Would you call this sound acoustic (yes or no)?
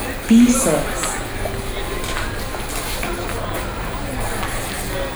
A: yes